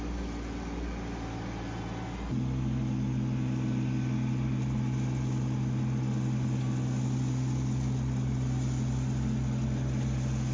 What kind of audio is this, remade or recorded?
recorded